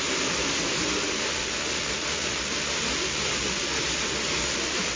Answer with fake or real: real